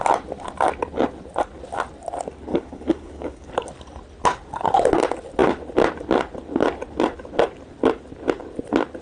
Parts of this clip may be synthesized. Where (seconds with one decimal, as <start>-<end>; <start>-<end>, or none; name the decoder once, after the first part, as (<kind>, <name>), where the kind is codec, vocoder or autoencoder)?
2.5-3.5 (codec, DAC)